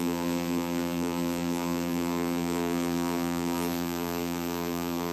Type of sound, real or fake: fake